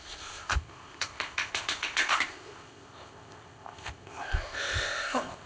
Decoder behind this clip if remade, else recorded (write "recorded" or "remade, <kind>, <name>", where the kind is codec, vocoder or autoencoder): remade, codec, ZipCodec